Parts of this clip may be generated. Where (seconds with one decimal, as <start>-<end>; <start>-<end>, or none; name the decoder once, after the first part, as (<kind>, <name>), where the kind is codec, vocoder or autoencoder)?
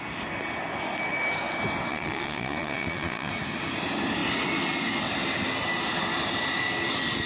1.9-3.3 (vocoder, Vocos)